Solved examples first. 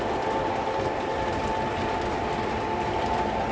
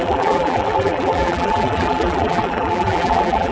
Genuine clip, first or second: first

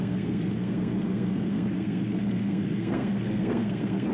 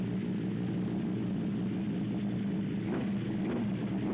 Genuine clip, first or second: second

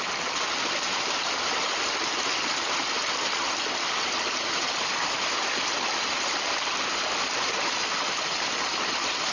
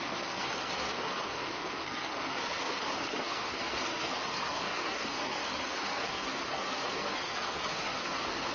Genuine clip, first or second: first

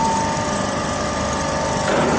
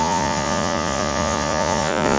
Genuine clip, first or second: first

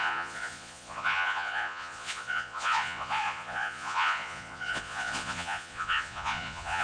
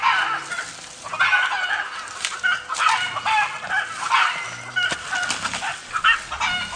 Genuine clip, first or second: second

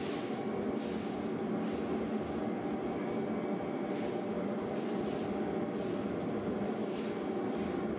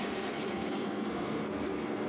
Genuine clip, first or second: first